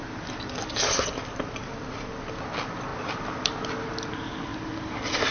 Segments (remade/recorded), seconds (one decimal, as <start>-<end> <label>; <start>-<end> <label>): 0.0-5.3 recorded